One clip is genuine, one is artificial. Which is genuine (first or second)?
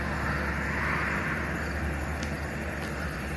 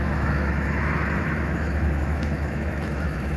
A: first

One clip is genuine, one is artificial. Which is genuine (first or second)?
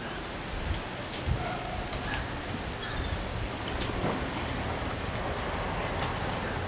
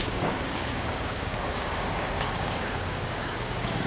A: first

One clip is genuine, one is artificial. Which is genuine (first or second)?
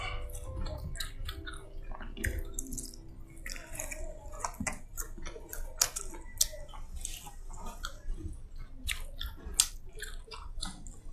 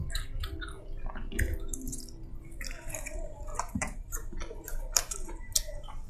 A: first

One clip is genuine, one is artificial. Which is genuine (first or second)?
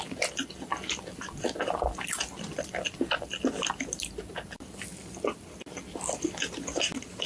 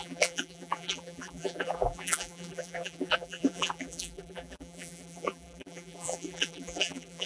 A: first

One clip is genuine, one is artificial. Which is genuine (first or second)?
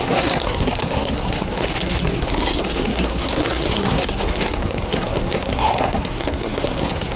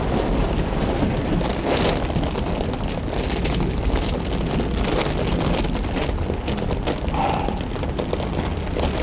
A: second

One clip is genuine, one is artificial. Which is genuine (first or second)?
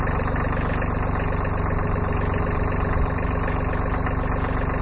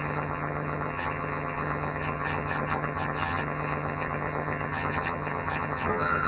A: first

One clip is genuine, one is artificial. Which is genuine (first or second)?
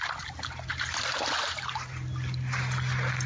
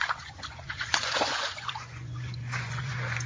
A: first